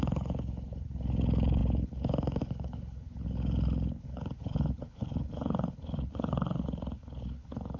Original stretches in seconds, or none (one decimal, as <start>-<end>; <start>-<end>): none